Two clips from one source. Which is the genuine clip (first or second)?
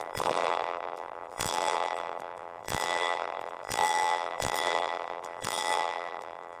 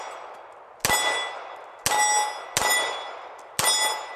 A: second